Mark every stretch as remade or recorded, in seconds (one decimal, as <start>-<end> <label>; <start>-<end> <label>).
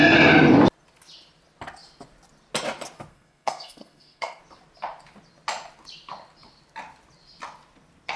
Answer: 0.0-3.1 recorded; 3.1-4.4 remade; 4.4-8.2 recorded